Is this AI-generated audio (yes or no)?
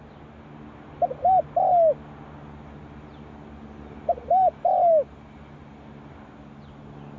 no